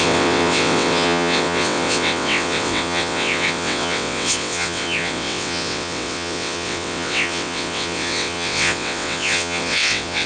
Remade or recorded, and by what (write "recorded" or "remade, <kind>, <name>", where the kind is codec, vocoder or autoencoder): remade, vocoder, WaveNeXt